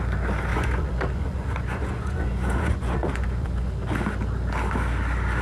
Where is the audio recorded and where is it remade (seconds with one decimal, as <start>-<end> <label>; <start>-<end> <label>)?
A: 0.0-0.5 recorded; 0.5-3.7 remade; 3.7-5.4 recorded